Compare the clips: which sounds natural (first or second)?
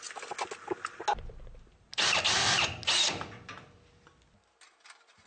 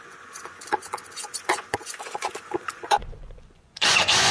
first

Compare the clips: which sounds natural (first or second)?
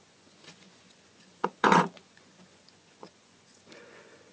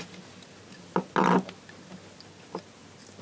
second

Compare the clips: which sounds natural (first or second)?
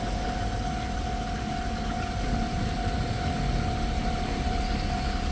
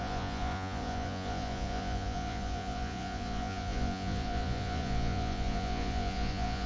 first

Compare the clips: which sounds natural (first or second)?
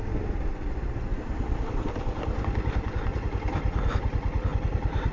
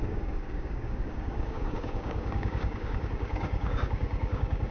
first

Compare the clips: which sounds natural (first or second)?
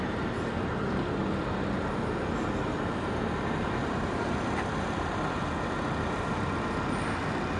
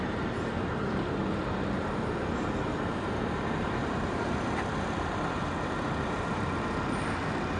first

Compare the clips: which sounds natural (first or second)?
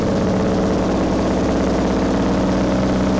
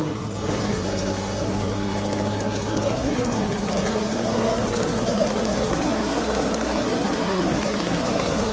first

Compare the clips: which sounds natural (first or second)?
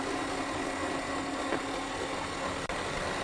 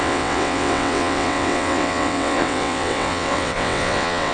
first